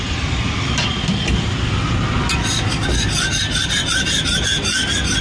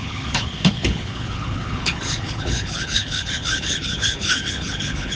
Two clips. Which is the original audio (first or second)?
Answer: first